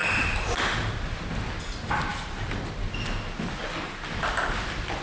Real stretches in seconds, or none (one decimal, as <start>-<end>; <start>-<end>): 0.0-2.1; 2.6-5.0